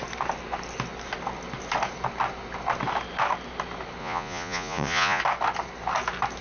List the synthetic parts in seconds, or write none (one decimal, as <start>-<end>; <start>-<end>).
4.0-5.2